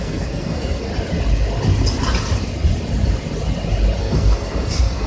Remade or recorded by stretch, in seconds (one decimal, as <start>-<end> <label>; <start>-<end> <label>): 0.0-0.9 remade; 0.9-4.0 recorded; 4.0-5.1 remade